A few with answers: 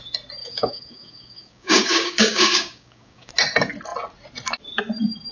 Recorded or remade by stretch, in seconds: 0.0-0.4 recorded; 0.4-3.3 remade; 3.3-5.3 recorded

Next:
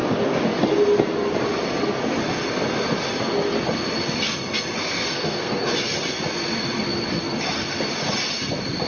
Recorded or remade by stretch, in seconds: 0.0-4.8 recorded; 4.8-5.6 remade; 5.6-8.9 recorded